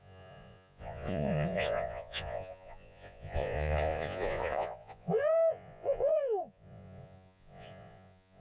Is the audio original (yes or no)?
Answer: no